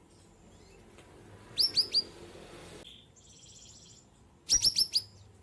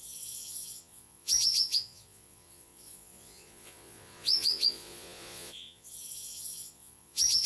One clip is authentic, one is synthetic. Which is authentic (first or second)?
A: first